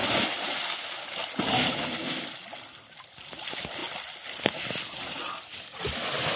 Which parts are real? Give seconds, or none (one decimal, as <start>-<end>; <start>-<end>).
0.0-6.4